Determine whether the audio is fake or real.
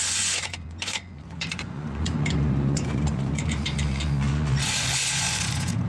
fake